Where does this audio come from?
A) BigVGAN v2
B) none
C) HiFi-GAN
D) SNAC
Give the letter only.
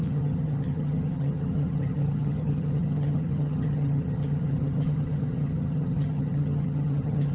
C